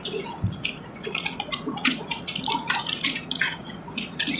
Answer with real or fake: fake